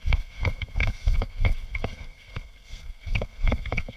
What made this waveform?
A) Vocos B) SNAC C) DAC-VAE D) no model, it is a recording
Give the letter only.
B